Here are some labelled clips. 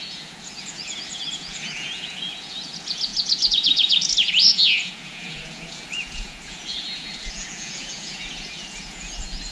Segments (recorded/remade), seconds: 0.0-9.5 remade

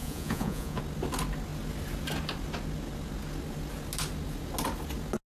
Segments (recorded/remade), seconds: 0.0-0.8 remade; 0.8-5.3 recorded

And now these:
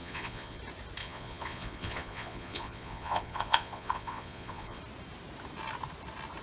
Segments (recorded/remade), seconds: 0.0-0.6 remade; 0.6-1.0 recorded; 1.0-4.8 remade; 4.8-6.4 recorded